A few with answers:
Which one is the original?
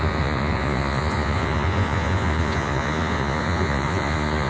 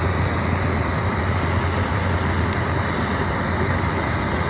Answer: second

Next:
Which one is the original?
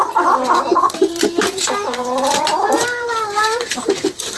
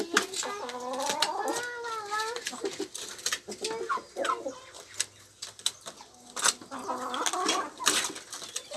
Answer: second